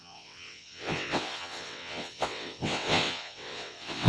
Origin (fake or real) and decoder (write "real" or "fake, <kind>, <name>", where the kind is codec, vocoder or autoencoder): fake, vocoder, WaveNeXt